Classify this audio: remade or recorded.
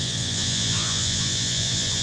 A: remade